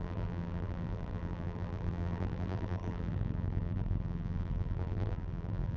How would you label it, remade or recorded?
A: remade